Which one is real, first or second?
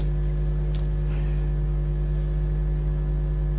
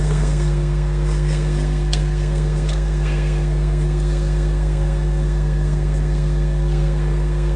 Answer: first